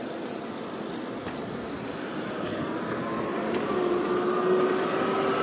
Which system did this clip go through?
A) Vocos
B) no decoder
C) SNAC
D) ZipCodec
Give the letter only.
B